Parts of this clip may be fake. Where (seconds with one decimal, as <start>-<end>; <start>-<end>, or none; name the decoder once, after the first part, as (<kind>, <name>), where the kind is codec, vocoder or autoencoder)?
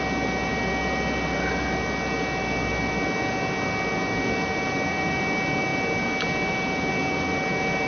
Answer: none